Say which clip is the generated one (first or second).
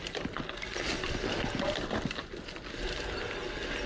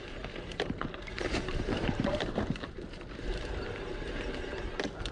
second